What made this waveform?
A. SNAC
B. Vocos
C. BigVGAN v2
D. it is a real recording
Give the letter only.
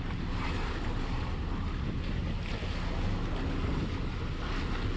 D